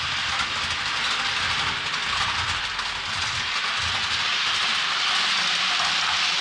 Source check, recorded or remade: recorded